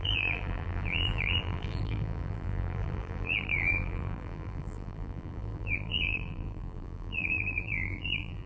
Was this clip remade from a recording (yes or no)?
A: yes